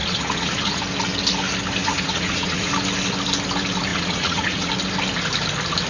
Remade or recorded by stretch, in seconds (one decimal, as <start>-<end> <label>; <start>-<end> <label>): 0.0-0.8 remade; 0.8-1.8 recorded; 1.8-2.7 remade; 2.7-3.9 recorded; 3.9-4.7 remade; 4.7-5.9 recorded